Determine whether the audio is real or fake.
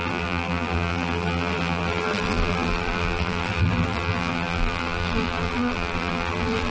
fake